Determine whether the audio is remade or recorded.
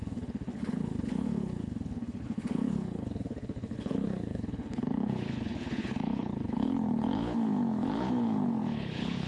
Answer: remade